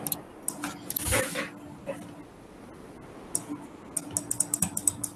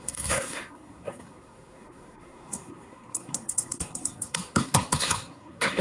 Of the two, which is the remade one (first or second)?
second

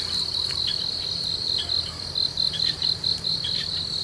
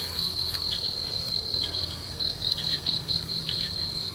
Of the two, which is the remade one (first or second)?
second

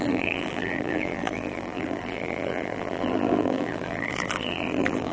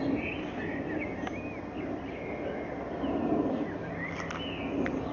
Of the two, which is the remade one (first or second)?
first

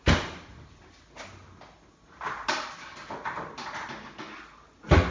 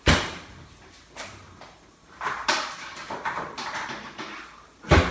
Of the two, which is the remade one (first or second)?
second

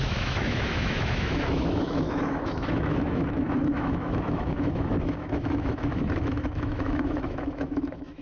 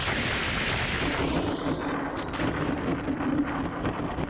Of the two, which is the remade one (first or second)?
first